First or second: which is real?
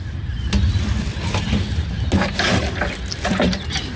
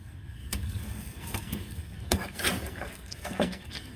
first